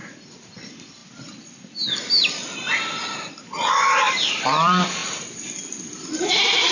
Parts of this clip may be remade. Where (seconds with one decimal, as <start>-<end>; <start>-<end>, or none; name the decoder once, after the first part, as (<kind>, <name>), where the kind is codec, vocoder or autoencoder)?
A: 0.0-1.0 (vocoder, BigVGAN v2); 3.3-6.7